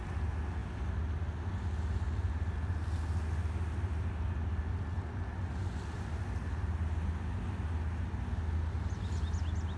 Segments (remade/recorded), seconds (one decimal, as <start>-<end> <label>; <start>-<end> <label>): 0.0-9.8 recorded